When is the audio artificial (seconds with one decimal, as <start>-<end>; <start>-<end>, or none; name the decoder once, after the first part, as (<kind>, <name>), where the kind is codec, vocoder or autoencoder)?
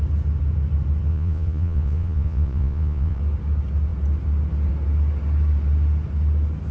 1.1-3.2 (vocoder, Vocos)